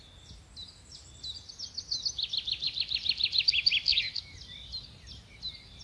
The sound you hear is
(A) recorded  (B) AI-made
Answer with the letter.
A